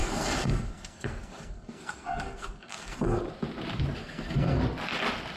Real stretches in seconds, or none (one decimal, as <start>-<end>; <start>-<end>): 3.2-4.0; 4.6-5.4

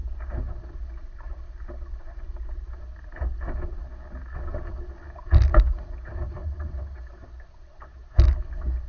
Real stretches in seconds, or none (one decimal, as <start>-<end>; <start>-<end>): 0.0-6.4; 7.0-8.9

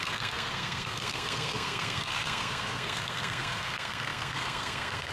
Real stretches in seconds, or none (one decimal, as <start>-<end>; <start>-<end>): none